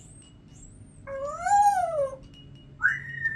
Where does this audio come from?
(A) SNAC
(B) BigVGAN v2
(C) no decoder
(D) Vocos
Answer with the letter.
C